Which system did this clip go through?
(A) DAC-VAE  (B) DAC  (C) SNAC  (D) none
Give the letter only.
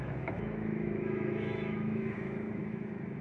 A